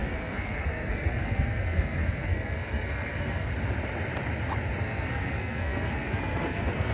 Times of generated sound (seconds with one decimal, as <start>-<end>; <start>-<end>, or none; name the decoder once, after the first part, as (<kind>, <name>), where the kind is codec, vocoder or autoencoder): 0.0-3.5 (codec, SNAC); 4.8-6.9